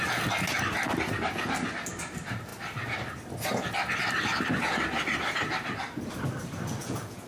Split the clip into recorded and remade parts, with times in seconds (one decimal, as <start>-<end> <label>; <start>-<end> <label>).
0.0-6.8 recorded; 6.8-7.3 remade